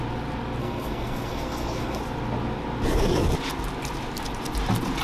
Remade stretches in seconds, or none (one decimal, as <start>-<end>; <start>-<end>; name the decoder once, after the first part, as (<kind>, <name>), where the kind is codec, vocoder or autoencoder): 0.6-2.0 (codec, SNAC)